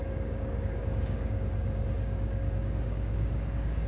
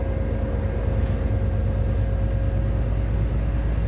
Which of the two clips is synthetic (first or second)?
first